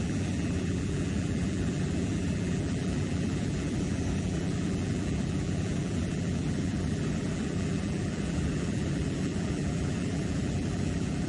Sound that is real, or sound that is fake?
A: fake